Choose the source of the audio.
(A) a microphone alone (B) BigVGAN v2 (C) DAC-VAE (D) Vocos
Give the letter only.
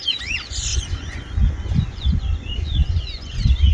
D